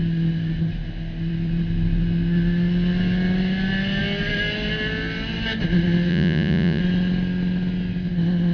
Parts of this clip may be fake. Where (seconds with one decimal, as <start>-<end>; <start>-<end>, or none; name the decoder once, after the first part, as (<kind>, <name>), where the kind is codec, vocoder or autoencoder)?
6.1-6.8 (vocoder, Vocos)